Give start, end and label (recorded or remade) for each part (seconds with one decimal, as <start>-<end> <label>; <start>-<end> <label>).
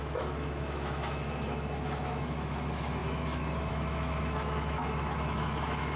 0.0-6.0 remade